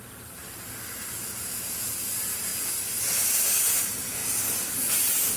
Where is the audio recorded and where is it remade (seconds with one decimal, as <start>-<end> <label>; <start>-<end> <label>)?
0.0-0.4 remade; 0.4-1.9 recorded; 1.9-2.5 remade; 2.5-3.8 recorded; 3.8-4.2 remade; 4.2-5.4 recorded